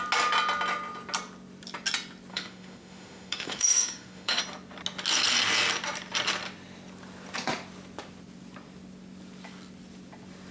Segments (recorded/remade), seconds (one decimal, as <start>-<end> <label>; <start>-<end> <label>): 0.0-2.3 recorded; 2.3-4.4 remade; 4.4-10.5 recorded